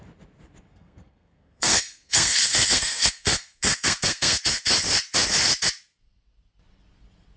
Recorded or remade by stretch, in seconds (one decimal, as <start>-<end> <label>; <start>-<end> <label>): 0.0-0.7 recorded; 0.7-4.4 remade; 4.4-7.4 recorded